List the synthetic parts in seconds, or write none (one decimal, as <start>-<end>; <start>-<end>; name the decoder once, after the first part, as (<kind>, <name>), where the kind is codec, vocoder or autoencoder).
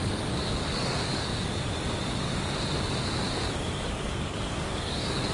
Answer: 0.0-1.3 (codec, DAC); 3.8-5.3